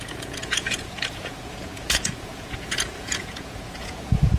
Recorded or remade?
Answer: remade